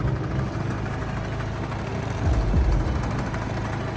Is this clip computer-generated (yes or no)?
no